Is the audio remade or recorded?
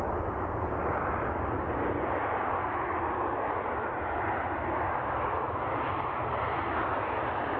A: recorded